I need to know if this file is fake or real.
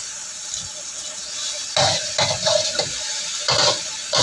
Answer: real